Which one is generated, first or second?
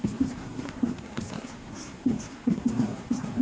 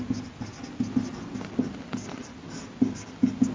first